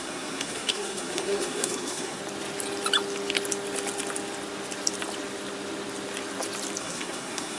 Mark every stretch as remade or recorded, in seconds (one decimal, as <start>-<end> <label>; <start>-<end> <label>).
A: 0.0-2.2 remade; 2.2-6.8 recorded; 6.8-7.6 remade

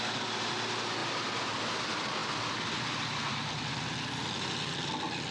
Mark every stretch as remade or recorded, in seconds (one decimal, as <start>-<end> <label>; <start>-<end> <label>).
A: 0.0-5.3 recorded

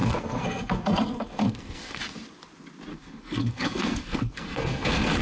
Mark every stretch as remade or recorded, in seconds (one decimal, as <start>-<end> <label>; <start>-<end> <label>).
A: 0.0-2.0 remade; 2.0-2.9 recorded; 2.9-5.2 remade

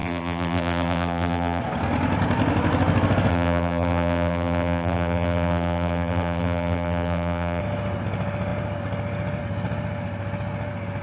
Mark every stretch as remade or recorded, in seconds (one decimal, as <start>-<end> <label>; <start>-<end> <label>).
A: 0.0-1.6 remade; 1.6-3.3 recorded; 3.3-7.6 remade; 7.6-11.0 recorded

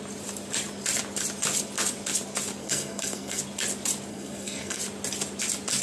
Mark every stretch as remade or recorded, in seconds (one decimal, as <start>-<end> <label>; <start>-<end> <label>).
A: 0.0-2.6 recorded; 2.6-3.4 remade; 3.4-4.1 recorded; 4.1-4.8 remade; 4.8-5.8 recorded

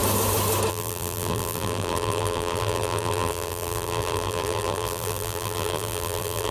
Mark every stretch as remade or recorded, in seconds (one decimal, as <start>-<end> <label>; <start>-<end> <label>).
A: 0.0-0.7 recorded; 0.7-6.5 remade

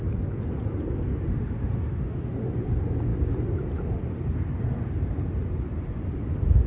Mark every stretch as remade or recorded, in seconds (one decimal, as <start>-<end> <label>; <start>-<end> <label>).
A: 0.0-1.1 recorded; 1.1-2.5 remade; 2.5-6.7 recorded

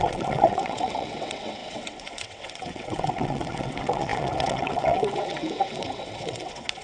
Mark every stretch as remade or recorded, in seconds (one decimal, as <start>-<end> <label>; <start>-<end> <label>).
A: 0.0-6.8 remade